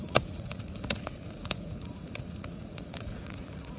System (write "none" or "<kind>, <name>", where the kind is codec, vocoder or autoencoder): vocoder, Vocos